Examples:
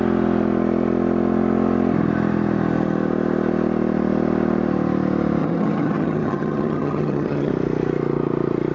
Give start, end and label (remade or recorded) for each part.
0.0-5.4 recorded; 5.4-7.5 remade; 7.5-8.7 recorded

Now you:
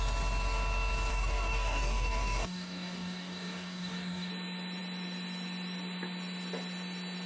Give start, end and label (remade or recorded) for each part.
0.0-1.1 recorded; 1.1-4.3 remade; 4.3-7.3 recorded

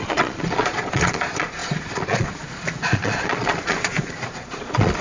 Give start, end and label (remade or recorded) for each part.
0.0-5.0 remade

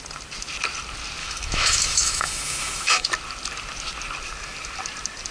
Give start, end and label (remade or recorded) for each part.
0.0-1.2 recorded; 1.2-3.1 remade; 3.1-5.3 recorded